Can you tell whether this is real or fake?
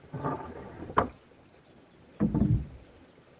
fake